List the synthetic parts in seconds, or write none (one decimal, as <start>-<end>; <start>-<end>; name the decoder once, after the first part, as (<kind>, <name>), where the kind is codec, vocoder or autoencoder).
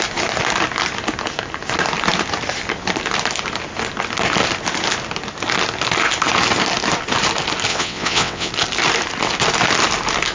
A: 7.7-8.5 (vocoder, WaveNeXt)